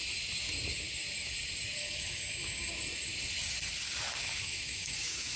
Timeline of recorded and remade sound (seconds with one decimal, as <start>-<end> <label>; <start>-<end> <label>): 0.0-1.8 recorded; 1.8-2.7 remade; 2.7-4.2 recorded; 4.2-5.4 remade